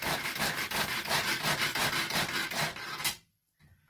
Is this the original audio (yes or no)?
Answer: yes